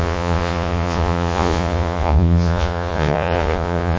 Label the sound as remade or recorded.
remade